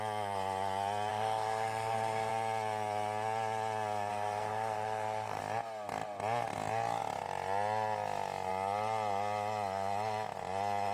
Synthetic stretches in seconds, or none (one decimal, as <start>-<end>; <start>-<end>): 1.1-2.3; 4.1-5.4